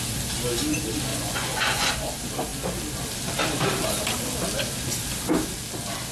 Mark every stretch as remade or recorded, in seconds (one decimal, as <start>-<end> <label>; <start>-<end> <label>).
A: 0.0-1.1 recorded; 1.1-1.9 remade; 1.9-6.1 recorded